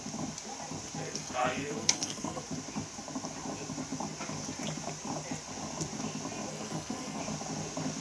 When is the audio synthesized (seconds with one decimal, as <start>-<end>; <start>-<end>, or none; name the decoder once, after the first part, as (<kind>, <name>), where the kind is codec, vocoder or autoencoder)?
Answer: 1.0-2.4 (codec, SNAC); 6.5-7.2